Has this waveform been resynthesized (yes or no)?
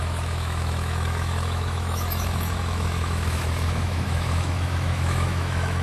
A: yes